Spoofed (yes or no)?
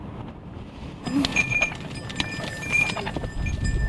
no